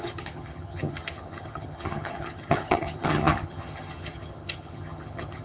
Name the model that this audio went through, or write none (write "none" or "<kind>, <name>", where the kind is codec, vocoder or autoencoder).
vocoder, HiFi-GAN